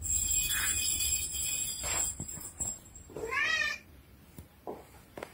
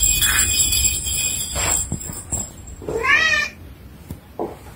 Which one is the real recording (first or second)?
second